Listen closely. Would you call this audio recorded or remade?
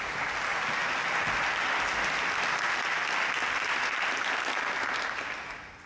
recorded